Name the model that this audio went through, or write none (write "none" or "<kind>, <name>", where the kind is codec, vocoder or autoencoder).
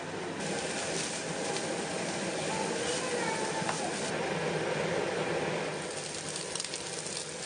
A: none